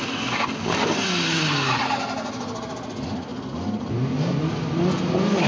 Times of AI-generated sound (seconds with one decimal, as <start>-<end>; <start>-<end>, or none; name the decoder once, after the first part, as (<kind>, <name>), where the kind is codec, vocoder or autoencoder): none